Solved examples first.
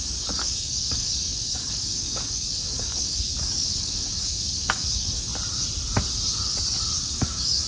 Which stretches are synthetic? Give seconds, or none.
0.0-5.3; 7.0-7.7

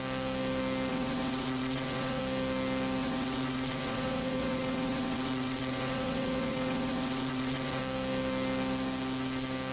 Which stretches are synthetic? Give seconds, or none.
0.9-2.2; 3.0-7.8